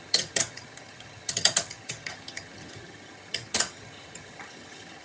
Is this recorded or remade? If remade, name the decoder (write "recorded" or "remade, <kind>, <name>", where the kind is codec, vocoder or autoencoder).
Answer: remade, vocoder, HiFi-GAN